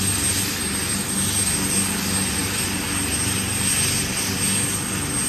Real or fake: real